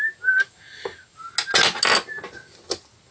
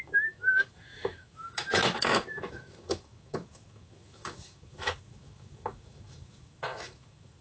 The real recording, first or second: first